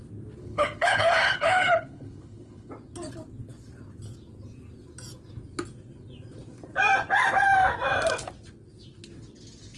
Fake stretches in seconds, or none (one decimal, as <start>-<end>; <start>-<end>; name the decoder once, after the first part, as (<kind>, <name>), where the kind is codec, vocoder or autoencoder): 0.4-2.7 (codec, HILCodec)